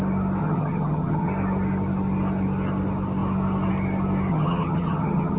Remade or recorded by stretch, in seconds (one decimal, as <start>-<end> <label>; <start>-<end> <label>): 0.0-0.4 recorded; 0.4-1.3 remade; 1.3-4.3 recorded; 4.3-5.4 remade